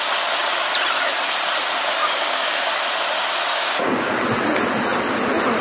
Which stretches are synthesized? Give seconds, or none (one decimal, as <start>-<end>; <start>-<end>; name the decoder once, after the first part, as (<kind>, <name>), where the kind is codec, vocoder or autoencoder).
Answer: 2.0-2.7 (codec, DAC); 3.5-4.2